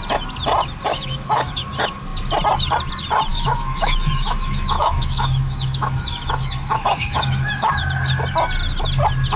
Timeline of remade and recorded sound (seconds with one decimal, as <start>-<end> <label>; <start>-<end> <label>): 0.0-0.9 recorded; 0.9-1.6 remade; 1.6-3.3 recorded; 3.3-7.8 remade; 7.8-9.4 recorded